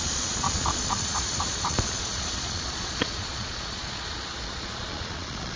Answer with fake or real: fake